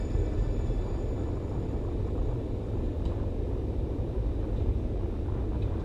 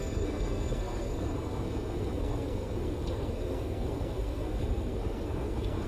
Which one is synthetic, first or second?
second